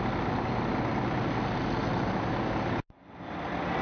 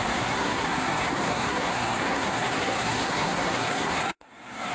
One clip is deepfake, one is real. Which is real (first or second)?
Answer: first